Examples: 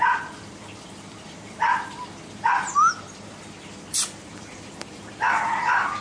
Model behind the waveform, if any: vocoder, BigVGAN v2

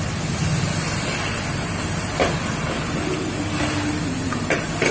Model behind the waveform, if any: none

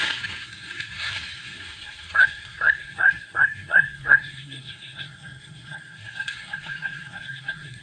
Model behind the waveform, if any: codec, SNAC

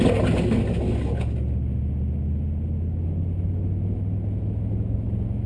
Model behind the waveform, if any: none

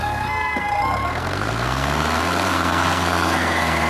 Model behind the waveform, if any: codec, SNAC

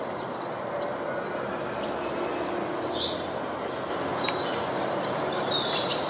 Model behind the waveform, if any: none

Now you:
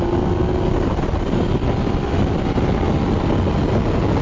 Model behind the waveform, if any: none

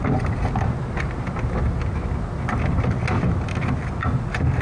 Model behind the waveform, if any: none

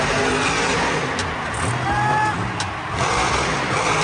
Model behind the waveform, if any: none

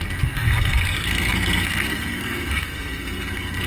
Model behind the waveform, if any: codec, SNAC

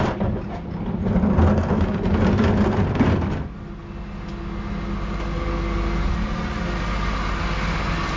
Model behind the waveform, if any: none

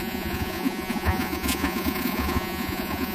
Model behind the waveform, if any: vocoder, Vocos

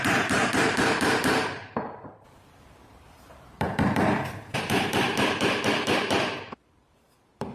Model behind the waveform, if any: vocoder, BigVGAN v2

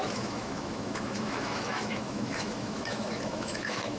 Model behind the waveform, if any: autoencoder, DAC-VAE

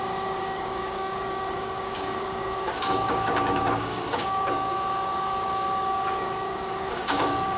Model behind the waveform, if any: codec, DAC